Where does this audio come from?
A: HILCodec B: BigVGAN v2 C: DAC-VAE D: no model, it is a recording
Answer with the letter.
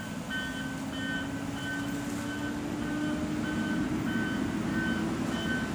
D